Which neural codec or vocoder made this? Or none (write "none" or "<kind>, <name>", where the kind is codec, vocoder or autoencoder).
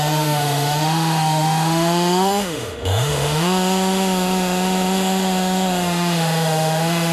autoencoder, DAC-VAE